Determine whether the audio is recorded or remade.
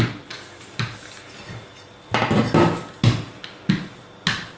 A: recorded